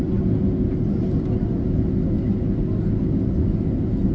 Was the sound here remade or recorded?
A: recorded